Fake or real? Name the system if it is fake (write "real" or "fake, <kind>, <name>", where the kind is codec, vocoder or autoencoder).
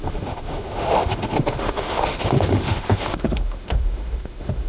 fake, autoencoder, DAC-VAE